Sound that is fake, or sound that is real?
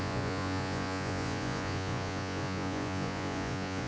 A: fake